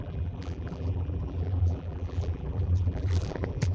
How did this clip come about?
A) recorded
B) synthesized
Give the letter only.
B